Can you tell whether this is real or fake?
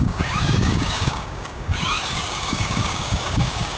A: fake